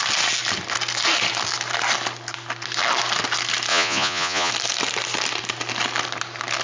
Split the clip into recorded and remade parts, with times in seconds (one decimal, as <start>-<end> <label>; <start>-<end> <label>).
0.0-3.7 recorded; 3.7-4.5 remade; 4.5-6.6 recorded